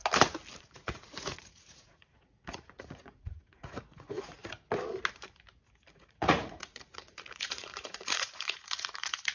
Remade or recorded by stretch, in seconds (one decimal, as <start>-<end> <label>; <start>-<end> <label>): 0.0-0.6 recorded; 0.6-4.4 remade; 4.4-5.9 recorded; 5.9-9.3 remade